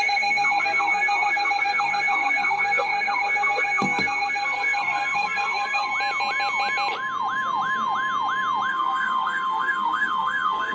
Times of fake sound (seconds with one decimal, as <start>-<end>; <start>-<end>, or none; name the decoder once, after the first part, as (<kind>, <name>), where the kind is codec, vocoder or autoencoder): 0.0-5.9 (codec, SNAC); 8.7-10.7